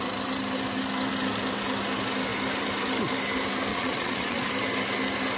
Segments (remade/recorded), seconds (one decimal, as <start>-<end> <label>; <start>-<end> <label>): 0.0-3.7 recorded; 3.7-4.5 remade; 4.5-5.4 recorded